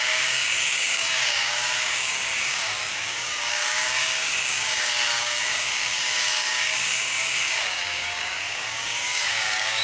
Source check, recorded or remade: remade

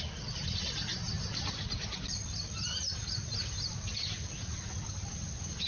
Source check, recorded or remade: recorded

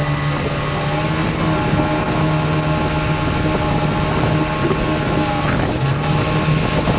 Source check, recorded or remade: recorded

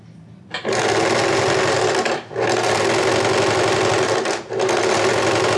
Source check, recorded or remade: recorded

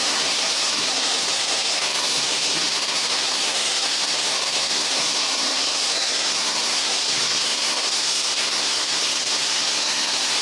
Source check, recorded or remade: remade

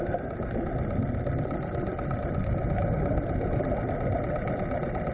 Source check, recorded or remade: recorded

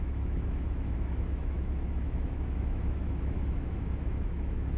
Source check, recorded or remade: remade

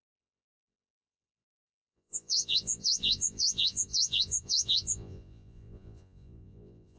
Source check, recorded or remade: remade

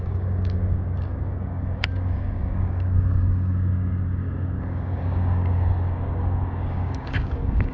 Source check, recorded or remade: remade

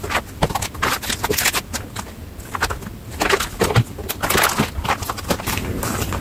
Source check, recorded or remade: recorded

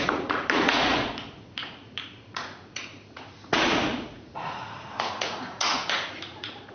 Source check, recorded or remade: remade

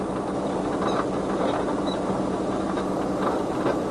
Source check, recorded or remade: recorded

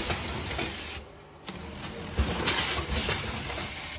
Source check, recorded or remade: recorded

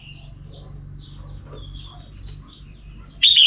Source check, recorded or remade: recorded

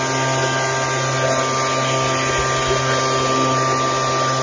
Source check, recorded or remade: recorded